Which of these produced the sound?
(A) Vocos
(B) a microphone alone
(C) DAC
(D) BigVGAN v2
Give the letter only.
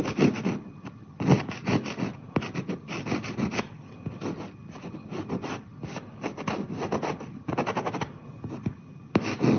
B